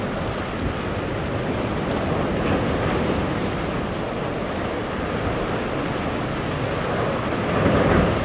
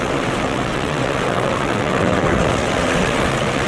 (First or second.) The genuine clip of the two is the first